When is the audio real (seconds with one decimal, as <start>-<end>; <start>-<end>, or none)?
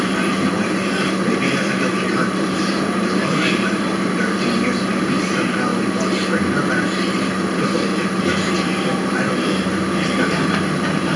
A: 5.7-6.7